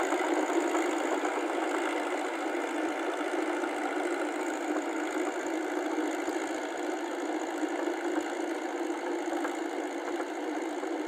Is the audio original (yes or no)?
yes